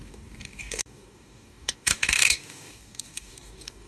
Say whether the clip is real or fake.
fake